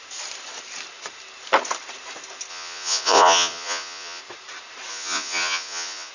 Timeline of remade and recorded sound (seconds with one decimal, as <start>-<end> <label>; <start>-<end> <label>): 0.0-2.5 recorded; 2.5-4.2 remade; 4.2-4.9 recorded; 4.9-6.1 remade

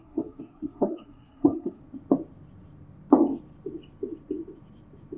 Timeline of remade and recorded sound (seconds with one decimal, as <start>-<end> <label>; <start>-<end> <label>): 0.0-1.8 remade; 1.8-5.2 recorded